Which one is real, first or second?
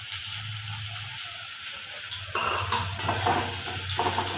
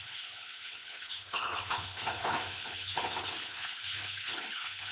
first